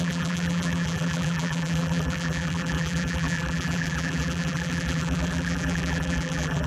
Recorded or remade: remade